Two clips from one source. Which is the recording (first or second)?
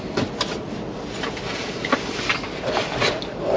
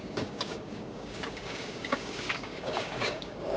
first